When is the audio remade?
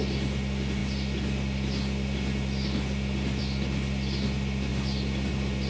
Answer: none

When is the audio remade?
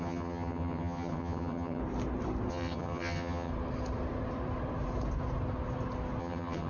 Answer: 0.0-1.8 (vocoder, HiFi-GAN); 2.5-3.5; 6.2-6.7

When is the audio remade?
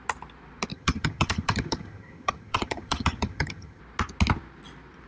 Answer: 0.7-3.8 (vocoder, HiFi-GAN)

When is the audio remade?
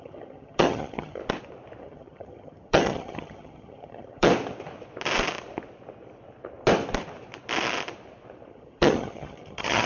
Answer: 0.0-1.2 (vocoder, HiFi-GAN); 1.8-4.3; 8.5-9.9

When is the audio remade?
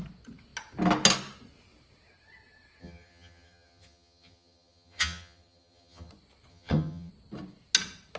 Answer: 2.8-6.1 (vocoder, HiFi-GAN); 6.5-7.1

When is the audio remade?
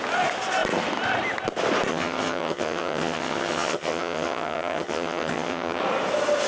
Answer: 1.9-5.8 (vocoder, HiFi-GAN)